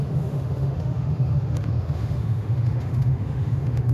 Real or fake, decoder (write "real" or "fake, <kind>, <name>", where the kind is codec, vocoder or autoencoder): fake, autoencoder, DAC-VAE